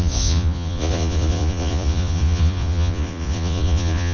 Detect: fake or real fake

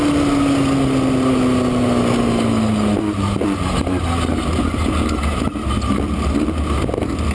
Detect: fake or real real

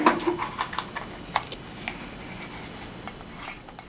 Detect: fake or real real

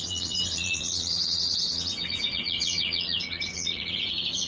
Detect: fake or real fake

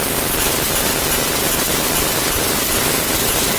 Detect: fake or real real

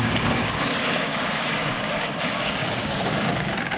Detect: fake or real fake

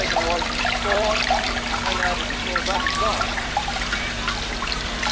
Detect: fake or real fake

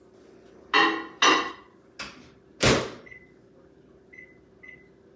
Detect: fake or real real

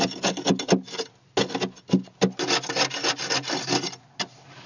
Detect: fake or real real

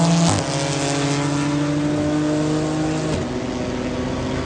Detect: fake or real real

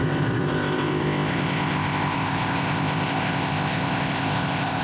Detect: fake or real fake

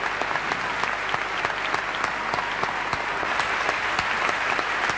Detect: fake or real real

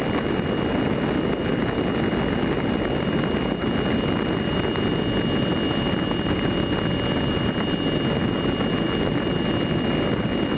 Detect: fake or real real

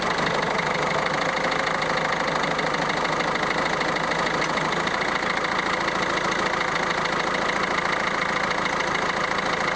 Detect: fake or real real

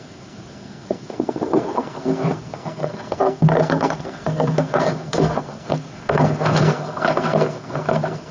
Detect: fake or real fake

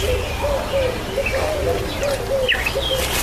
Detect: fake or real real